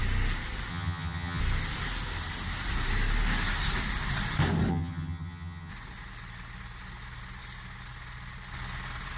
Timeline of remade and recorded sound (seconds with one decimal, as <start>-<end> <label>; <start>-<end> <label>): 0.0-0.7 recorded; 0.7-1.4 remade; 1.4-4.7 recorded; 4.7-5.7 remade; 5.7-9.2 recorded